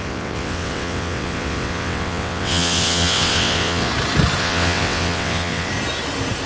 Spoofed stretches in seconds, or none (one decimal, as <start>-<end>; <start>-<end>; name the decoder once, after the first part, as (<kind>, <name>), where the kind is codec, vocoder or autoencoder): 0.0-3.9 (vocoder, WaveNeXt); 4.4-5.7